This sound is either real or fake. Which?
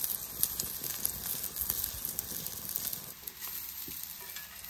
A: real